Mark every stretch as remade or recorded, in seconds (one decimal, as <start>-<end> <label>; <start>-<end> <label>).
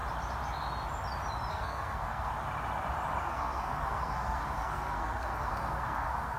0.0-1.5 recorded; 1.5-2.3 remade; 2.3-3.2 recorded; 3.2-6.4 remade